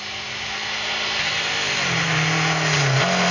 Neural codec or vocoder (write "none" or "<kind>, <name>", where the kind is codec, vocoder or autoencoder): none